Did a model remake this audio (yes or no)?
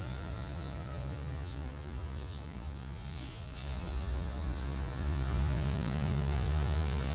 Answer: yes